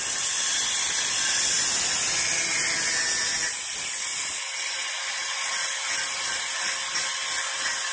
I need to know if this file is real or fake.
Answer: real